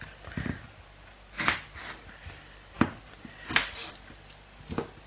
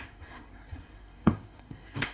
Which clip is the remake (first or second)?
second